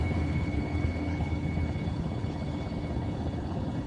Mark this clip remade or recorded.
remade